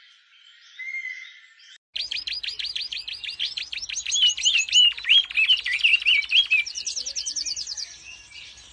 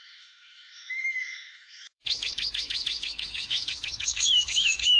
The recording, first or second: first